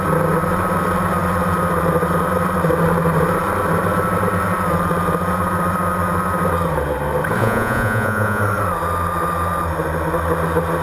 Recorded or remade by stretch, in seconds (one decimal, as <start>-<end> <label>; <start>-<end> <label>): 0.0-7.4 recorded; 7.4-8.4 remade; 8.4-10.8 recorded